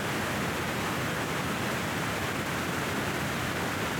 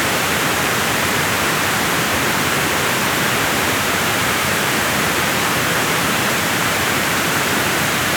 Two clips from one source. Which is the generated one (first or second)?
second